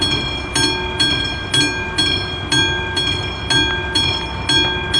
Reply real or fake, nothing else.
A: real